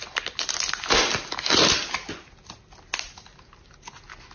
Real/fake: real